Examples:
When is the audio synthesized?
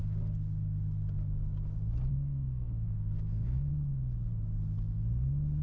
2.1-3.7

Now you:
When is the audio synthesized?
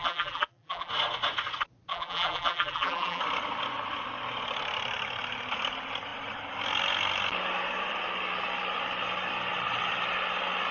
0.0-0.9; 1.9-3.2